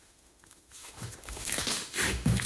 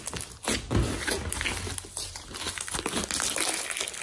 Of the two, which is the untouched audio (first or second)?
second